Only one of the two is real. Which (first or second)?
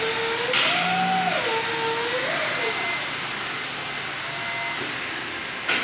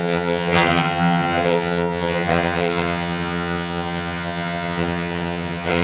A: first